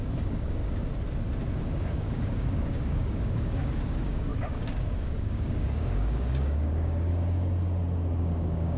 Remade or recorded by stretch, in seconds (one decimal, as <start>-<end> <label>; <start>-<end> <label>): 0.0-0.6 remade; 0.6-1.6 recorded; 1.6-7.1 remade; 7.1-8.2 recorded; 8.2-8.8 remade